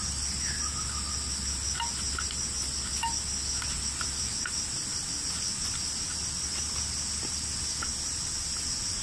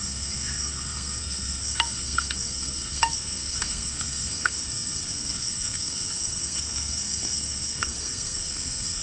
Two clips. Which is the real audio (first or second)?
first